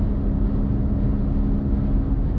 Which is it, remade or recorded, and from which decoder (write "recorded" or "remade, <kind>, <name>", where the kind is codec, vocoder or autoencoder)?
recorded